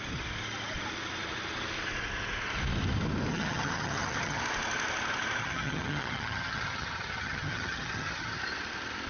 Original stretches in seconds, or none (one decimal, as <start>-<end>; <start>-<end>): 0.0-3.3; 4.4-5.4; 8.4-9.1